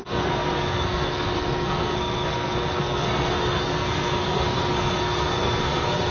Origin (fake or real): fake